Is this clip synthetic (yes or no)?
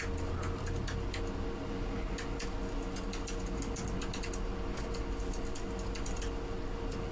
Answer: no